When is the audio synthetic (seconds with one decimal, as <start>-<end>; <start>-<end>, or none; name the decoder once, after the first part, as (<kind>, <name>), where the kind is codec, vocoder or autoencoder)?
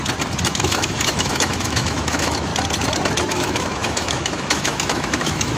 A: 0.5-2.5 (autoencoder, DAC-VAE); 3.3-5.6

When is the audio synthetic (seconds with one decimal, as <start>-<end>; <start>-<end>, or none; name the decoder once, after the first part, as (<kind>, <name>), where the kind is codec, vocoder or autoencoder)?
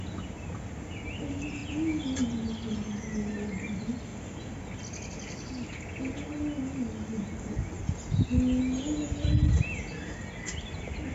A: none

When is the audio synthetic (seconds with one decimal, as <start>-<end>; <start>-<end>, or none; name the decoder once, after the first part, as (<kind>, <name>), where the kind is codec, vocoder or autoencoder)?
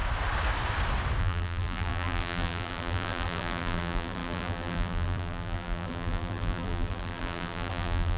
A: 1.2-8.2 (vocoder, BigVGAN v2)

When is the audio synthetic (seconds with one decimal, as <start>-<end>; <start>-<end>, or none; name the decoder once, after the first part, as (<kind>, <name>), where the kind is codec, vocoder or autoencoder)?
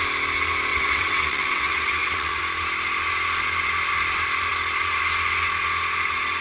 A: 0.7-2.4 (vocoder, WaveNeXt)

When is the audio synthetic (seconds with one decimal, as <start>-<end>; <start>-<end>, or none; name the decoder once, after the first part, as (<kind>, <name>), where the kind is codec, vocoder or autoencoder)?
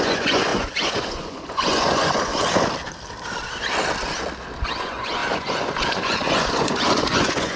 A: 0.0-2.3 (vocoder, Vocos); 4.8-7.6